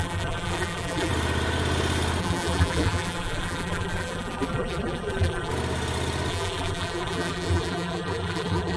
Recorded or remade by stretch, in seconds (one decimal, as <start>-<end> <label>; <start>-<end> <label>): 0.0-1.1 remade; 1.1-2.2 recorded; 2.2-5.5 remade; 5.5-6.3 recorded; 6.3-8.8 remade